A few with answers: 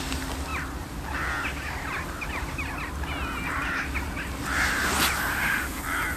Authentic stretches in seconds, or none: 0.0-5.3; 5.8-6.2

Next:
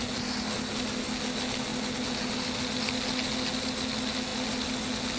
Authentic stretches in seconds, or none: 0.0-5.2

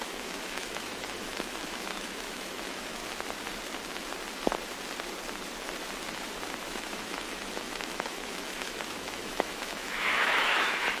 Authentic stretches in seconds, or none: 3.0-6.6

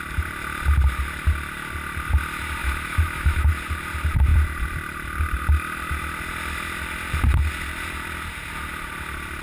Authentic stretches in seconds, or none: 0.0-2.6; 3.5-9.4

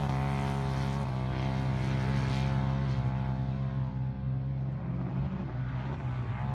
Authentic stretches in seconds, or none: 0.0-6.5

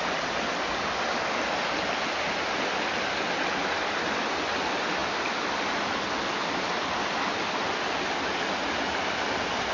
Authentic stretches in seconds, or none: 0.0-9.7

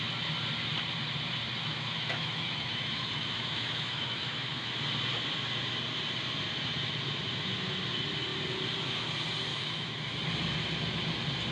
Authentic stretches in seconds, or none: 0.0-1.6; 4.7-9.5; 10.0-11.5

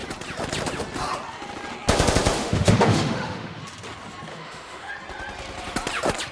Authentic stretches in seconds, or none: 0.0-2.4; 3.6-4.3; 4.9-6.3